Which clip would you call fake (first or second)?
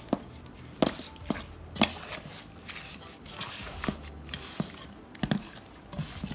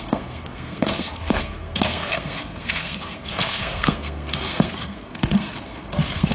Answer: second